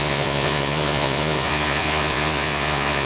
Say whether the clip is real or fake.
fake